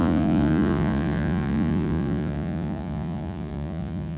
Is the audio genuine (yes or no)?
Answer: no